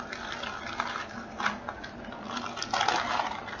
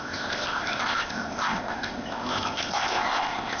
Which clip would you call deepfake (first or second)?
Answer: second